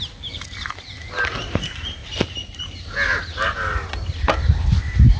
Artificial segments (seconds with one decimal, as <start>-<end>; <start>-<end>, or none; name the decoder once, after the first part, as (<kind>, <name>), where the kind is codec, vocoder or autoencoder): none